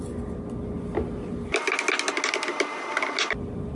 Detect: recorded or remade recorded